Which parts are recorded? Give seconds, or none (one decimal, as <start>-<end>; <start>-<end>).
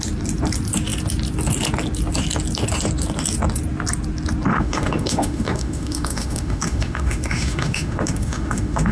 0.0-4.5